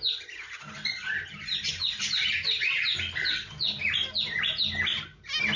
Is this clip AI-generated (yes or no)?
no